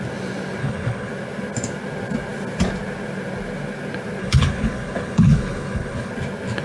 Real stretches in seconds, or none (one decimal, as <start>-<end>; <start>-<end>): 0.0-0.6; 1.1-4.2; 6.1-6.6